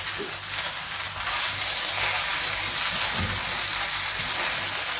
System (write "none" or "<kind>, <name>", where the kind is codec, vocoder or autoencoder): none